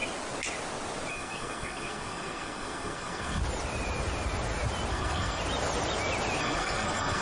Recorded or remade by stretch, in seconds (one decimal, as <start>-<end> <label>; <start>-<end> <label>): 0.0-1.1 recorded; 1.1-3.4 remade; 3.4-4.9 recorded; 4.9-5.4 remade; 5.4-6.4 recorded; 6.4-7.2 remade